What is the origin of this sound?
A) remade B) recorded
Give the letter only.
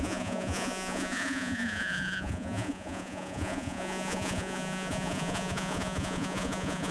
A